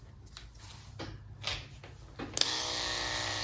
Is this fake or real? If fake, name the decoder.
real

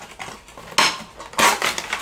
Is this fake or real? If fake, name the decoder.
real